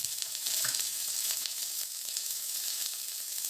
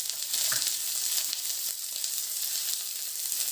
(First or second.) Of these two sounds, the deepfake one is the first